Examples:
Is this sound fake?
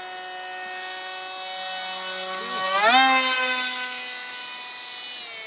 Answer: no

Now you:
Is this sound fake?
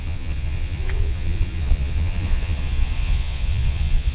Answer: yes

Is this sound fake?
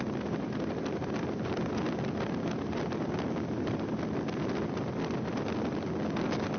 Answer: no